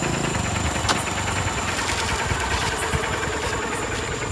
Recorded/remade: recorded